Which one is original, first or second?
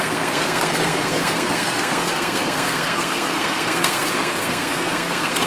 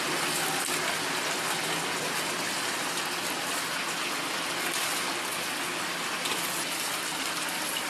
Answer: second